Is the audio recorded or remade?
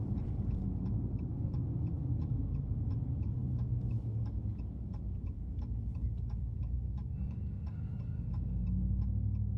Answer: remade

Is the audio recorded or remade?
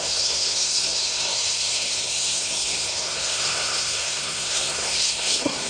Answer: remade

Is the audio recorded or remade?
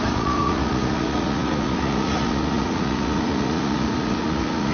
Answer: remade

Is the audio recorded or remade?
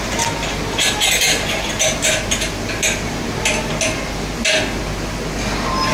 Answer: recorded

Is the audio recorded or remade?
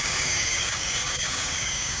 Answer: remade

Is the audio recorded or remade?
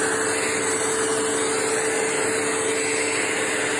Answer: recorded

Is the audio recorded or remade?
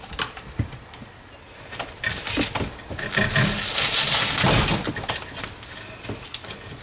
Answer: recorded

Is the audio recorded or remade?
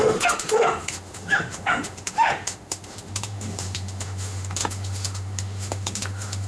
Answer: remade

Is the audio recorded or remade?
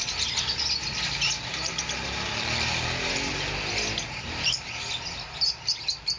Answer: recorded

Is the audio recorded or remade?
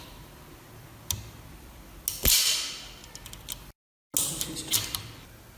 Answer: recorded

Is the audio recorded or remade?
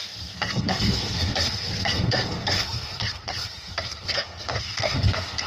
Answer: remade